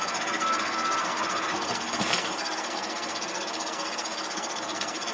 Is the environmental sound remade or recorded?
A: remade